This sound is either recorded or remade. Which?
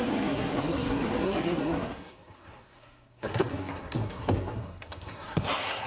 remade